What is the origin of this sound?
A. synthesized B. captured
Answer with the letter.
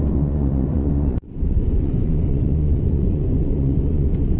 A